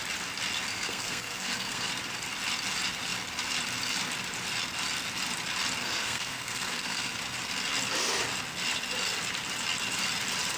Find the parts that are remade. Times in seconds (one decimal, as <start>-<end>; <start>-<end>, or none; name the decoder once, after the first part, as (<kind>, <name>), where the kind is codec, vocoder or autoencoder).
0.7-1.9 (codec, SNAC); 5.8-7.1